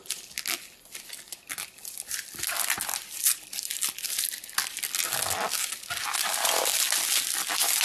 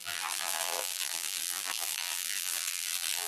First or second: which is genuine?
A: first